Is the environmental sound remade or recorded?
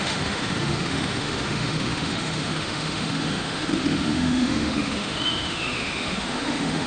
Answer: remade